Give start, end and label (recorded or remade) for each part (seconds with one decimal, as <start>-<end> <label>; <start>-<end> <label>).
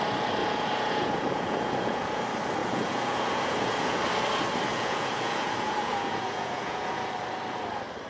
0.0-0.4 recorded; 0.4-2.2 remade; 2.2-2.6 recorded; 2.6-4.0 remade; 4.0-4.7 recorded; 4.7-7.1 remade; 7.1-8.1 recorded